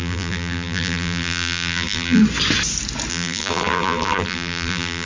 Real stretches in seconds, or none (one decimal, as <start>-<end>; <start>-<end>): 2.2-3.1